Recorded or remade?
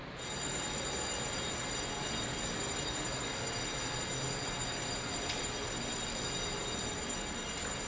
recorded